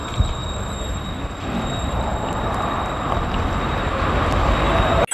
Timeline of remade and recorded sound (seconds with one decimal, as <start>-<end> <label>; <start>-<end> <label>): 0.0-5.1 recorded